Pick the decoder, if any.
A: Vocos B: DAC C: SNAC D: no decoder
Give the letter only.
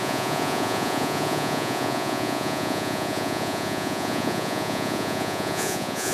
A